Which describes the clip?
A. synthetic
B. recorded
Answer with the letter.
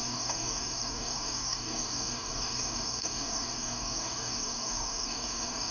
A